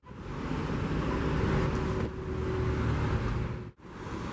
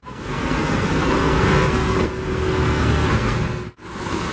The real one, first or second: first